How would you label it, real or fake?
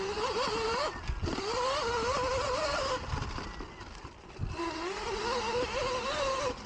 real